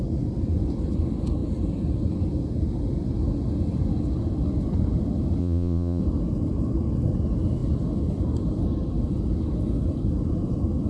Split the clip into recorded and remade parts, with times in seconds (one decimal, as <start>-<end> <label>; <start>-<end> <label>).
0.0-5.4 recorded; 5.4-6.0 remade; 6.0-10.9 recorded